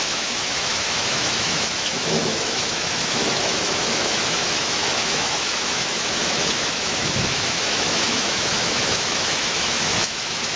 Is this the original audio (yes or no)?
no